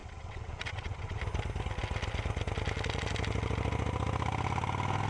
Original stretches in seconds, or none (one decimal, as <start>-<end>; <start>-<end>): 1.2-5.1